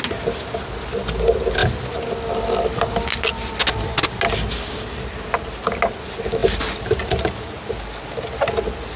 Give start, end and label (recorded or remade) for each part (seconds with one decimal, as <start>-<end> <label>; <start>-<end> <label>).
0.0-9.0 recorded